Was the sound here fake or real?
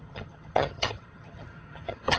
fake